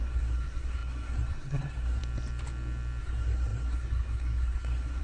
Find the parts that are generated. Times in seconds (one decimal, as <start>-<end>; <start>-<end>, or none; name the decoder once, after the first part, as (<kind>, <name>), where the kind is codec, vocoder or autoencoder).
0.0-2.0 (codec, SNAC); 3.0-5.0